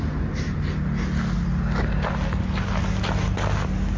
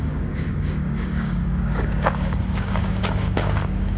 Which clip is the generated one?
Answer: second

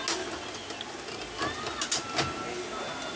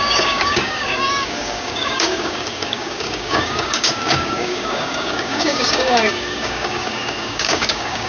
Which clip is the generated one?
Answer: second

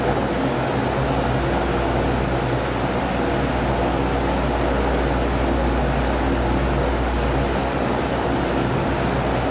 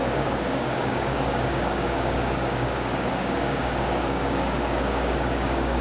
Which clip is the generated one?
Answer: second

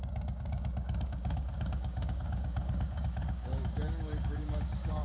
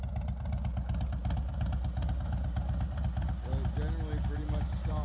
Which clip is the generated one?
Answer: first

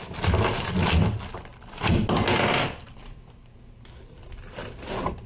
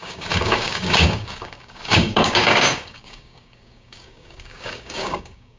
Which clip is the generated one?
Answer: second